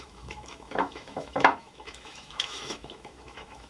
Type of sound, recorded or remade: remade